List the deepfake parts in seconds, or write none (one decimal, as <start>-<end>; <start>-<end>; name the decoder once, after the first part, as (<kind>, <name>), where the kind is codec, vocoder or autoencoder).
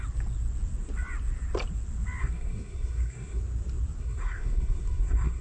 2.2-3.4 (codec, SNAC); 4.0-5.4